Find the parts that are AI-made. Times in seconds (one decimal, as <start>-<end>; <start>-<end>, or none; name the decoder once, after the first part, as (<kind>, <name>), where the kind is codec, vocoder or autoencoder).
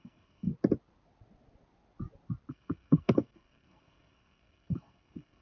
0.0-0.5 (codec, SNAC); 2.5-5.4